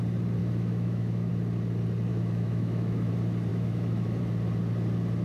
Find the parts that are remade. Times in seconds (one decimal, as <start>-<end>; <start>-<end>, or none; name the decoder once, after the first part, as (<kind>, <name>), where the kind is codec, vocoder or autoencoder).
0.4-1.3 (autoencoder, DAC-VAE); 2.1-3.1; 3.5-4.2